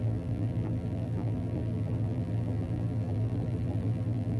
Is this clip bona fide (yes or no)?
no